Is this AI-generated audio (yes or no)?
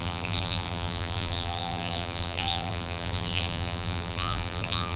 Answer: yes